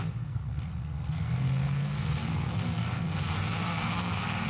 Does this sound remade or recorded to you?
remade